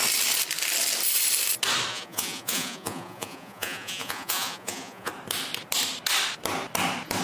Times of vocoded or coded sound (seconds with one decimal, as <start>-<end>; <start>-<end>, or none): 1.9-5.1